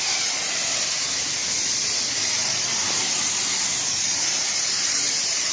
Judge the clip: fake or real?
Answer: fake